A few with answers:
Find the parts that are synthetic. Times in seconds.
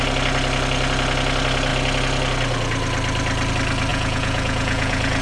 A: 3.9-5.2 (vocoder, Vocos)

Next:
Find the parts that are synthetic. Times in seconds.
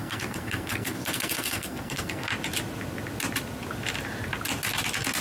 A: 0.0-2.3 (codec, SNAC)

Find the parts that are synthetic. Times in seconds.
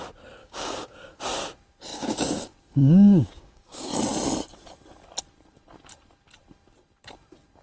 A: 0.4-1.2 (codec, DAC); 1.9-2.4; 2.8-3.9